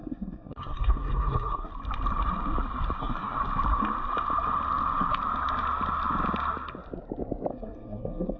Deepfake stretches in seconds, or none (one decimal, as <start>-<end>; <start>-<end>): 0.0-1.7; 3.0-3.4; 7.5-8.4